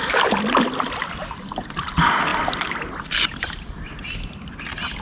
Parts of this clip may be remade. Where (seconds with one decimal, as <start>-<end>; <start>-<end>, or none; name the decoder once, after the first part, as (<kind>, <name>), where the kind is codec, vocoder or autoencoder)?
none